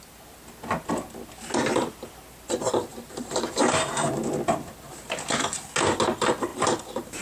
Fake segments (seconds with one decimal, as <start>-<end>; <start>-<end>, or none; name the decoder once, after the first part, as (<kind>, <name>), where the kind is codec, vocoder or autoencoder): 2.9-4.3 (vocoder, BigVGAN v2); 6.5-7.2